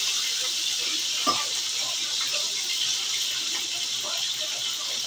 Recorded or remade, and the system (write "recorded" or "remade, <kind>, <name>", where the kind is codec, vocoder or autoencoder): recorded